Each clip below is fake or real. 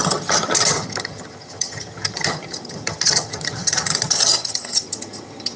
fake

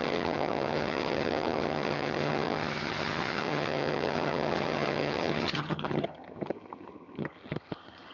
fake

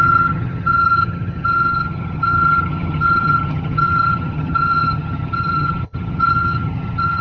fake